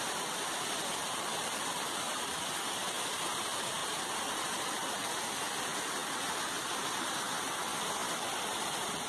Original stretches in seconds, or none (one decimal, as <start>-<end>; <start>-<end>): 0.0-1.0; 2.3-3.8; 6.9-8.0